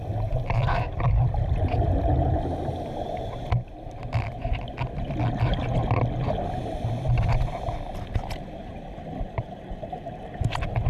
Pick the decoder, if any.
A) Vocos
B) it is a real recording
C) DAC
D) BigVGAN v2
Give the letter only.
B